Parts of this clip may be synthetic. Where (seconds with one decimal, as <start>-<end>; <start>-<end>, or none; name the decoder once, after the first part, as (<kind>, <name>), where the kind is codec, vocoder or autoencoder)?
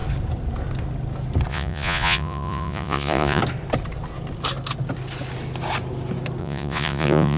1.5-3.4 (vocoder, Vocos); 6.4-7.4